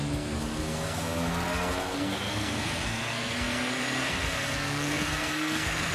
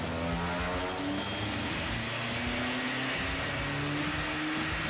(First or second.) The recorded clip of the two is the second